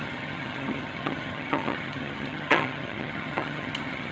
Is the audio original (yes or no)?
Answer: no